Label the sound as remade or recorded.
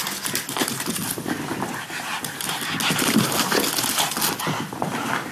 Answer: recorded